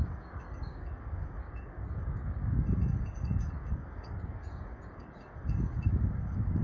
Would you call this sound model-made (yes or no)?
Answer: yes